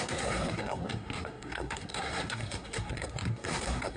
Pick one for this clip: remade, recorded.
remade